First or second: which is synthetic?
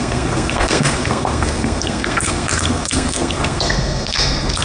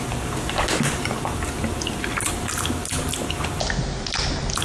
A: first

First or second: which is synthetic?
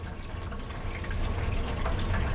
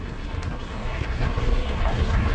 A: second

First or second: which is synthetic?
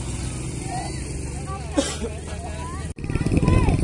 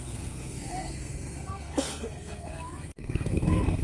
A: second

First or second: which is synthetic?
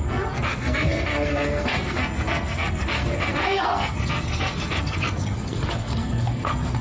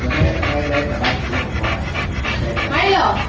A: first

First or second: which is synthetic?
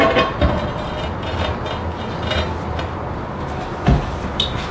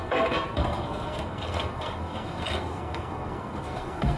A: second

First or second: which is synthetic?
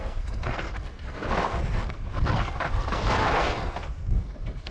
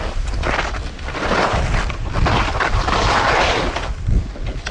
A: first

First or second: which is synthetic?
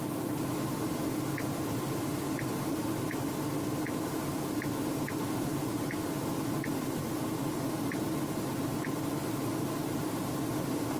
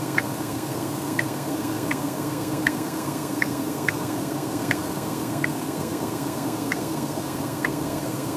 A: second